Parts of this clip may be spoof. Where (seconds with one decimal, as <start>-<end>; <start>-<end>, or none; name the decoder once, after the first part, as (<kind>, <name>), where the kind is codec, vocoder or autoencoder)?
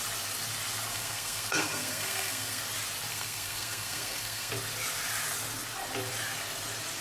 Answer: 0.9-2.6 (codec, SNAC); 3.1-4.5